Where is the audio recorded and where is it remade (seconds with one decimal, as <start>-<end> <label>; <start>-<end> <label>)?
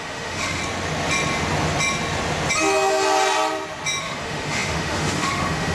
0.0-0.6 remade; 0.6-4.0 recorded; 4.0-5.7 remade